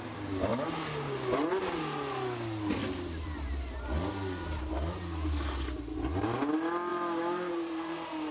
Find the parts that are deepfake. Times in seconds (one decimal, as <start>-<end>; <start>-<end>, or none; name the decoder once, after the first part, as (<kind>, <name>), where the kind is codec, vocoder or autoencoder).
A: 2.8-3.8 (vocoder, BigVGAN v2); 6.9-8.3